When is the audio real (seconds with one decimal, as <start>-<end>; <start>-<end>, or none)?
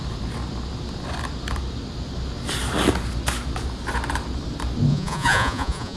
0.0-4.9